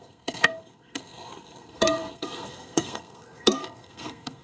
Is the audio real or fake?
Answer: fake